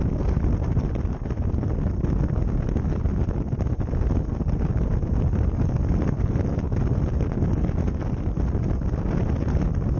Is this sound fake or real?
real